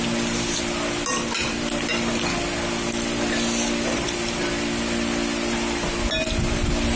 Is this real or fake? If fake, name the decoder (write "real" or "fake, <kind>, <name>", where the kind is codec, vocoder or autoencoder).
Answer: real